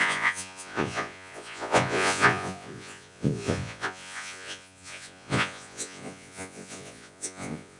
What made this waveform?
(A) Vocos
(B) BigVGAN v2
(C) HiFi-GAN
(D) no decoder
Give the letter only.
A